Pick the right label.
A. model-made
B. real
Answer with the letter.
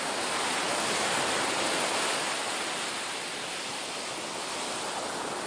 B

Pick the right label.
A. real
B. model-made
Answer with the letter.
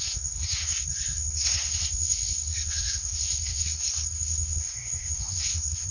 B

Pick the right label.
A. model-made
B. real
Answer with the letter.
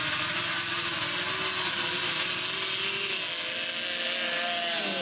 B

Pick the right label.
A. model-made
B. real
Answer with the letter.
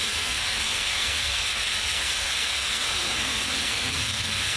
A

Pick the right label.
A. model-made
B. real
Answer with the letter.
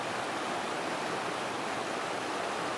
B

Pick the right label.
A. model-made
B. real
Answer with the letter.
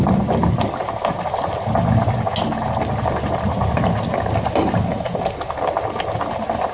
B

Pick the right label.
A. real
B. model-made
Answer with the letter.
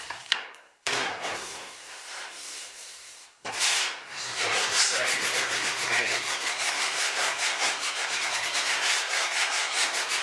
B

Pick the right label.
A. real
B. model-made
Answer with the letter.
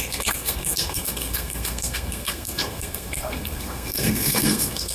B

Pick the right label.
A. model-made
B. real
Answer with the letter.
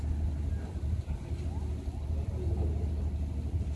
B